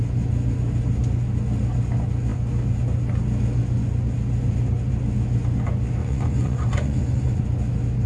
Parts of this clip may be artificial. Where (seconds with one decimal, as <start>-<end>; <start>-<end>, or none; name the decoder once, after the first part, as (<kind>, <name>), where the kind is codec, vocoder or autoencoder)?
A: 6.0-7.4 (vocoder, Vocos)